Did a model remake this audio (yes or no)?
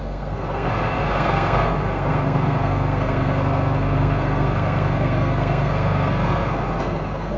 yes